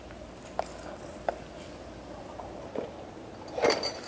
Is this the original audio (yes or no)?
yes